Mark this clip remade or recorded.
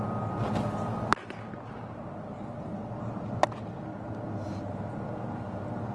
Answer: recorded